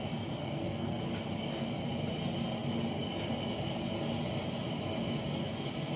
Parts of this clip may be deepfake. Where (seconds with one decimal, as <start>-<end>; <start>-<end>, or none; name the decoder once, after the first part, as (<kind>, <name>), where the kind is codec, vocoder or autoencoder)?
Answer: 0.4-1.0 (codec, SNAC)